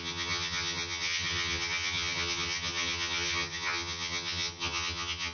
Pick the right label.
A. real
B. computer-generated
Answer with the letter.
B